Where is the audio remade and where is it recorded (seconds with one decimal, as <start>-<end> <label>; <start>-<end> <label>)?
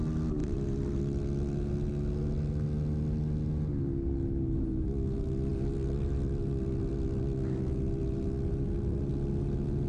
0.0-0.4 recorded; 0.4-1.0 remade; 1.0-9.9 recorded